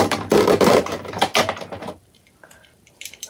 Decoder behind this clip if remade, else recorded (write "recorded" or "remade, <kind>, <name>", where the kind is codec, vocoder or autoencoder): remade, vocoder, BigVGAN v2